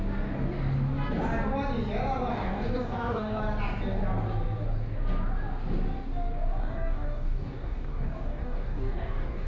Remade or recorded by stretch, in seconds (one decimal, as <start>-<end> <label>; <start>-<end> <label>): 0.0-2.3 recorded; 2.3-3.4 remade; 3.4-6.6 recorded; 6.6-9.5 remade